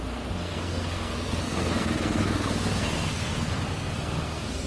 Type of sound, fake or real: fake